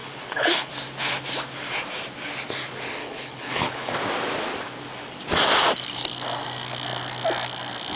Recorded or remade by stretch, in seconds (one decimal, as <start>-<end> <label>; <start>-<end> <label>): 0.0-0.7 remade; 0.7-3.0 recorded; 3.0-3.9 remade; 3.9-8.0 recorded